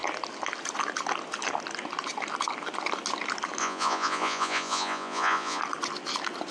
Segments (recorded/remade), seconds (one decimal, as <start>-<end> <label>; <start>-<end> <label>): 0.0-3.6 recorded; 3.6-5.6 remade; 5.6-6.5 recorded